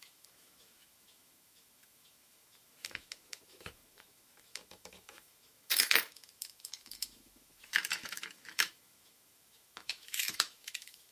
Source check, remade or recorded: remade